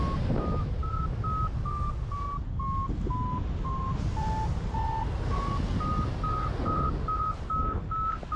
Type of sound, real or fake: real